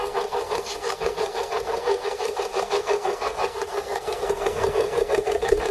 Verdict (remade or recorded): remade